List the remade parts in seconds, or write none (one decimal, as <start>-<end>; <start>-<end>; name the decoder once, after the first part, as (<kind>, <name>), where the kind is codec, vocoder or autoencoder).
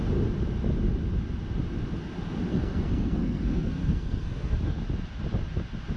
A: 2.5-4.8 (codec, SNAC)